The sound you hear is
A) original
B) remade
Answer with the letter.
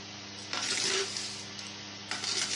A